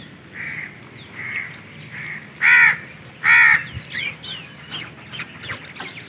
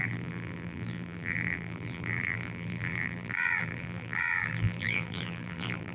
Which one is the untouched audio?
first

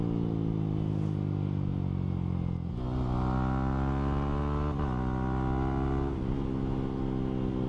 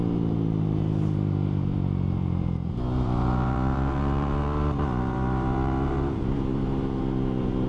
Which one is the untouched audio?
first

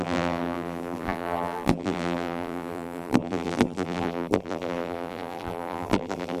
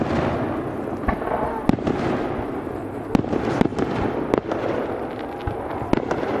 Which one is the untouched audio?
second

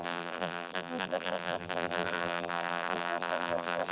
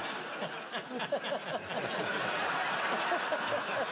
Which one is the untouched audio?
second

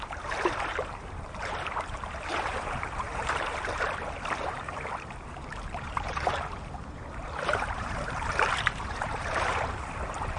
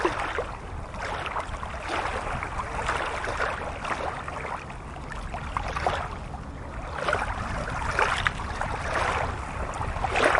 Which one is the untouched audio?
second